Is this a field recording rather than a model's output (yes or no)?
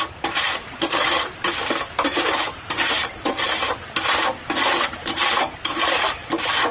no